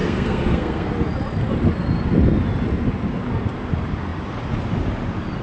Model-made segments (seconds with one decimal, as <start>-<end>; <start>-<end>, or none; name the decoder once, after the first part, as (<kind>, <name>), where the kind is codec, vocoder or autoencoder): 0.0-0.9 (codec, SNAC)

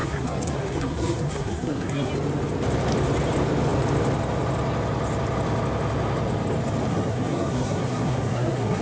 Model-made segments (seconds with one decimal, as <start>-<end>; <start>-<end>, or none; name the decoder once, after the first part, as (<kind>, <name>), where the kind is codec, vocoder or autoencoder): 0.0-2.1 (codec, SNAC); 6.9-8.8